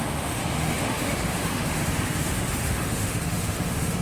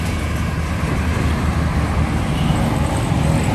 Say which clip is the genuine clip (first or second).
second